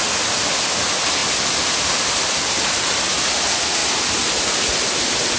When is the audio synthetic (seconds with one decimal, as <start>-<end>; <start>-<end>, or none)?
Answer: none